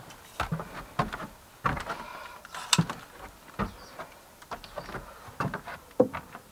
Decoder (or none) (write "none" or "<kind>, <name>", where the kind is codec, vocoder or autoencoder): none